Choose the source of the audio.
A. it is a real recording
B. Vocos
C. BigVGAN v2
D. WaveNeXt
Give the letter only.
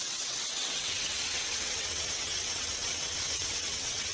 D